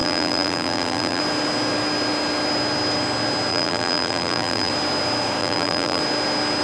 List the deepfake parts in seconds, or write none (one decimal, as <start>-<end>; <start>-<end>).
0.0-1.2; 3.5-4.7; 5.4-6.0